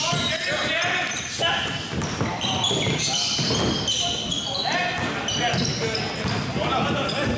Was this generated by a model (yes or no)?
no